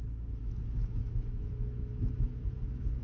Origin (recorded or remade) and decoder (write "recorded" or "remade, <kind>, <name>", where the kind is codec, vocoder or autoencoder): remade, autoencoder, DAC-VAE